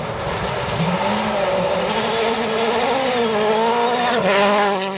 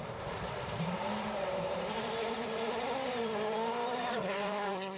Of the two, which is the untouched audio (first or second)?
first